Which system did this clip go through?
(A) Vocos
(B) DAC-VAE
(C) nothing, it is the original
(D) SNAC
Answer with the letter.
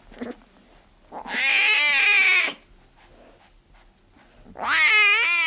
C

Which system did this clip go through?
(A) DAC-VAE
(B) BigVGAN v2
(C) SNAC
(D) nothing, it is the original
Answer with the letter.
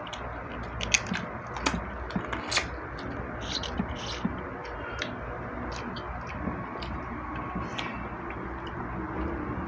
D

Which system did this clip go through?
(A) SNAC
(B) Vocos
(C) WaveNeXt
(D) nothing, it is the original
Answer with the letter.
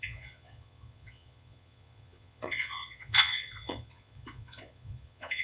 B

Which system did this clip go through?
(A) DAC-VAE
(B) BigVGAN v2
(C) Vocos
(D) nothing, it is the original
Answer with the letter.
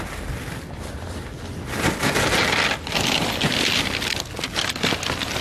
D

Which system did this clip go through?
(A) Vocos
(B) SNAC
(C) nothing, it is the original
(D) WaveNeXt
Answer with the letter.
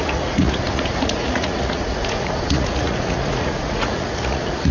A